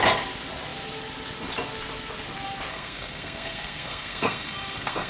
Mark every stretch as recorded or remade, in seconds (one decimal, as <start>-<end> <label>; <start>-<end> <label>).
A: 0.0-2.7 recorded; 2.7-5.1 remade